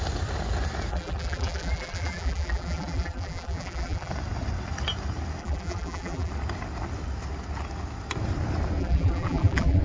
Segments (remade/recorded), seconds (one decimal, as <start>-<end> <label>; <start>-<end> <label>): 0.0-0.9 recorded; 0.9-4.1 remade; 4.1-5.4 recorded; 5.4-6.3 remade; 6.3-8.8 recorded; 8.8-9.8 remade